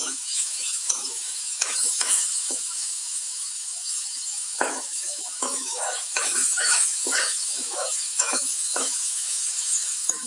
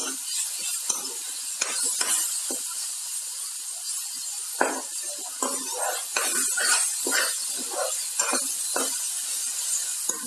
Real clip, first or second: second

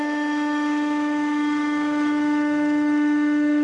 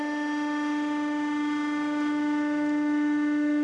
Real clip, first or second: second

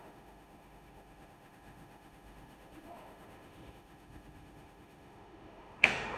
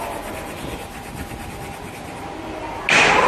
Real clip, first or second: second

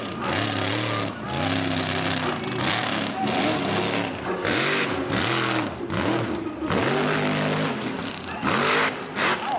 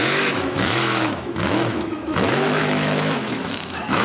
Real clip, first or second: first